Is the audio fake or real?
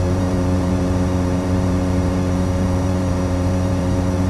fake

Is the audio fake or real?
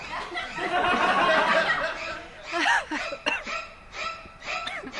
real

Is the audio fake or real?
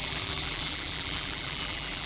fake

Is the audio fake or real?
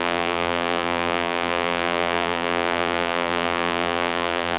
fake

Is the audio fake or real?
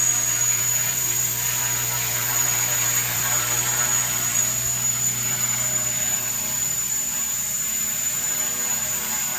fake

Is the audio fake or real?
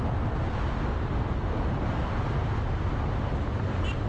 real